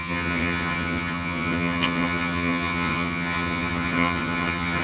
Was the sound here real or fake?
fake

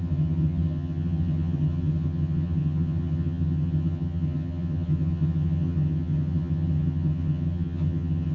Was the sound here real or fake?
fake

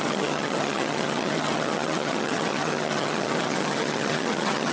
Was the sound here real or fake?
fake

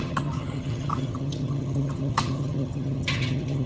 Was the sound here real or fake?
fake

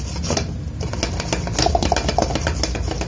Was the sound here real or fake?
real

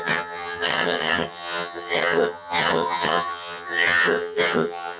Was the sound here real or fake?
fake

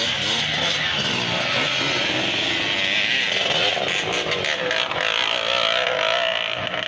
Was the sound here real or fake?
real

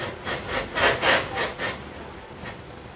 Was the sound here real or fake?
real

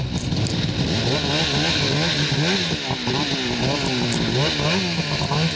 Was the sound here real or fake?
real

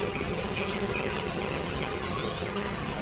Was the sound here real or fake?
fake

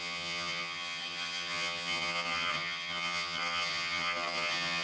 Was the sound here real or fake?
fake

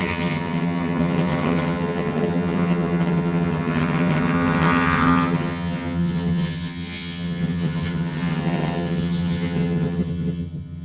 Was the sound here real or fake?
fake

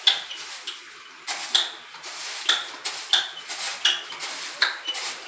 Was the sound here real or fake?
real